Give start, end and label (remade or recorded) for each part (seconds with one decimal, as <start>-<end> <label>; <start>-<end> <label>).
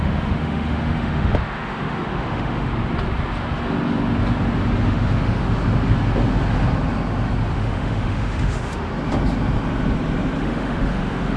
0.0-2.7 remade; 2.7-4.9 recorded; 4.9-5.4 remade; 5.4-7.5 recorded; 7.5-8.9 remade; 8.9-10.4 recorded; 10.4-11.4 remade